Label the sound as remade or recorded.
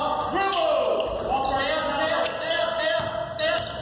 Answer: recorded